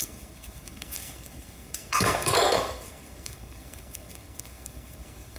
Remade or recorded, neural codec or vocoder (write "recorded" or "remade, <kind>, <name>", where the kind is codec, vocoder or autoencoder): remade, codec, SNAC